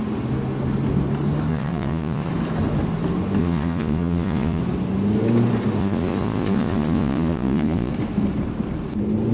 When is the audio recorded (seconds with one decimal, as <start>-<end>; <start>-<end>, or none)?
0.0-1.5; 2.3-3.4; 4.6-5.8; 7.9-9.3